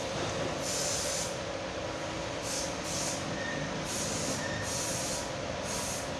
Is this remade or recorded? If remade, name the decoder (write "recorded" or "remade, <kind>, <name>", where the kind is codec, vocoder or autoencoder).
recorded